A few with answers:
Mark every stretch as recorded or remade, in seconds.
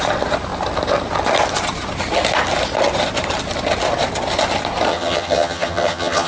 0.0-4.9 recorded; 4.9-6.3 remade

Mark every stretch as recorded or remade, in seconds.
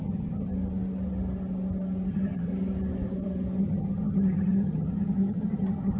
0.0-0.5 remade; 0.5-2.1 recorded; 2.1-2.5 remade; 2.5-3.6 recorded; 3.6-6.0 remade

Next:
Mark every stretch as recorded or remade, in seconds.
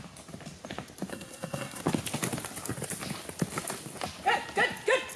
0.0-1.1 recorded; 1.1-1.8 remade; 1.8-5.2 recorded